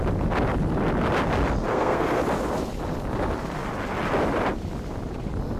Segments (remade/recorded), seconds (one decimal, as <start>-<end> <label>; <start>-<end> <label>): 0.0-1.7 recorded; 1.7-2.2 remade; 2.2-5.6 recorded